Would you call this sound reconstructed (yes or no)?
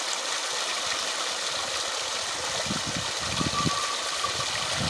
no